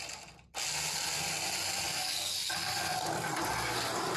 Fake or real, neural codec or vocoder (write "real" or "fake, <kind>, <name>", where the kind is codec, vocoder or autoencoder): real